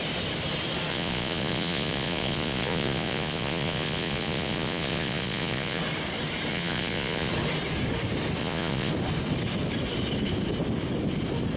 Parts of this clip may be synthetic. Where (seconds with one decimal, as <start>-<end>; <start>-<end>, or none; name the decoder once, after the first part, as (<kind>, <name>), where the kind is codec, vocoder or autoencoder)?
0.9-5.8 (vocoder, Vocos); 6.5-7.3; 8.4-8.9